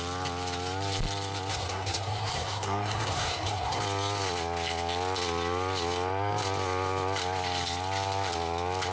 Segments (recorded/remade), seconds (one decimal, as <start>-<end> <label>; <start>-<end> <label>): 0.0-1.5 recorded; 1.5-3.8 remade; 3.8-8.9 recorded